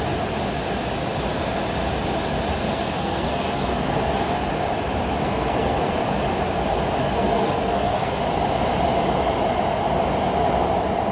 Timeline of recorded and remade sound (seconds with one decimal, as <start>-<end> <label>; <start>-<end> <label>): 0.0-2.5 recorded; 2.5-4.5 remade; 4.5-5.2 recorded; 5.2-6.0 remade; 6.0-7.0 recorded; 7.0-8.2 remade; 8.2-11.1 recorded